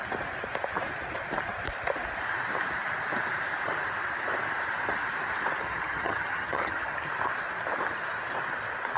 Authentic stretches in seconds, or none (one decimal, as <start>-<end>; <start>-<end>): 0.0-5.6; 7.1-9.0